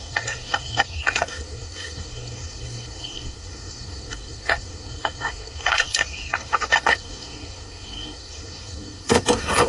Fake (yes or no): yes